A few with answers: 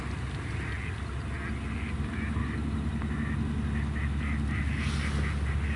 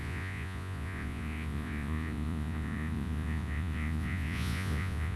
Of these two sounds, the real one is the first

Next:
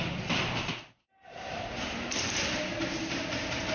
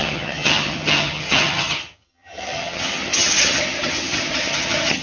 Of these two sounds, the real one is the first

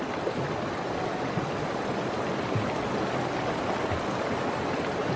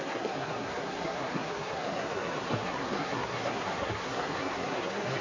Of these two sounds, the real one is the first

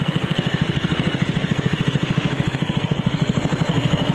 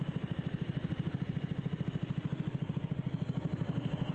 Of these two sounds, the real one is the second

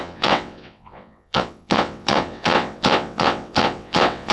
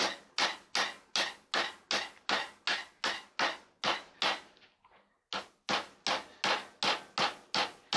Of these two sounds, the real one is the second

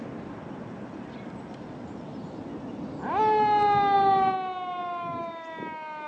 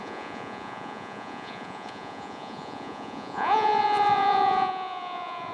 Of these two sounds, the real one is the first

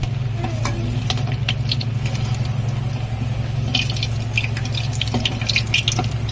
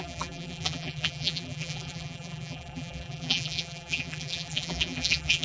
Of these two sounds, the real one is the first